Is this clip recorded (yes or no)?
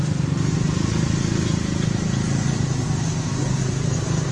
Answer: yes